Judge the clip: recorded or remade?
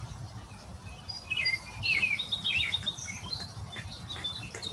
remade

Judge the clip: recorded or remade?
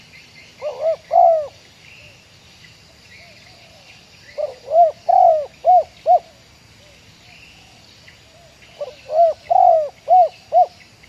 recorded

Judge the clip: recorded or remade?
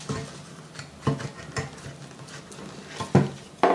recorded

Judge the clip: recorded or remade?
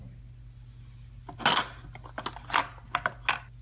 recorded